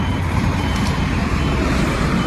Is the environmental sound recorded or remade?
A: remade